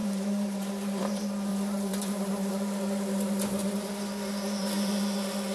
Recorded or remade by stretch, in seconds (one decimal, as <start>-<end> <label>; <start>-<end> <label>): 0.0-0.7 remade; 0.7-1.5 recorded; 1.5-2.5 remade; 2.5-5.5 recorded